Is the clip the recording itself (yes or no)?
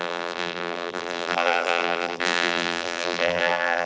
no